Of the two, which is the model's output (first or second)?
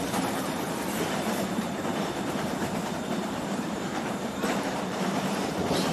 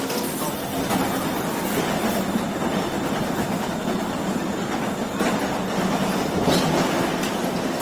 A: first